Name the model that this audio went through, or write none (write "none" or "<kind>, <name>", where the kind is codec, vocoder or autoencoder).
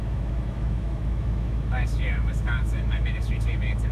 autoencoder, DAC-VAE